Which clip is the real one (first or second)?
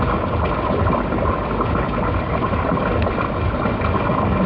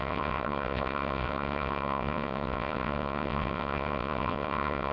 first